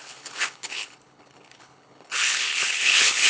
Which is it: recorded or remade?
remade